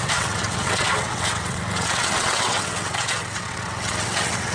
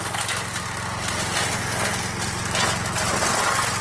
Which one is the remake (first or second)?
first